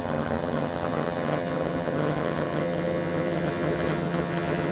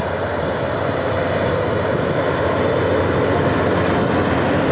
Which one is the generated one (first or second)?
first